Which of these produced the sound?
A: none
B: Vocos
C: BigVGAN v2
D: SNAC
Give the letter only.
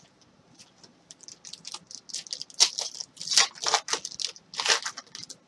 A